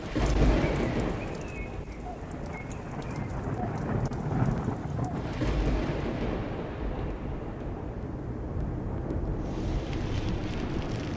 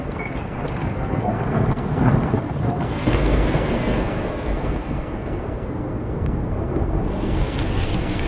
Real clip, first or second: first